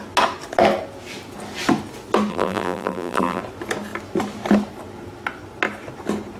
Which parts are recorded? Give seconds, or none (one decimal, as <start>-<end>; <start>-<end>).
0.0-2.3; 3.4-6.4